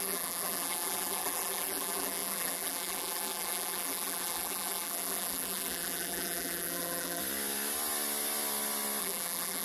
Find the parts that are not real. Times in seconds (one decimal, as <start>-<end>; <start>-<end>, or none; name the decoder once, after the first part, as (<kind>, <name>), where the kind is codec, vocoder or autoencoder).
0.0-7.2 (vocoder, BigVGAN v2); 9.0-9.6